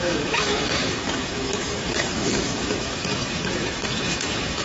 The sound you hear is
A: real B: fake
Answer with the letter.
B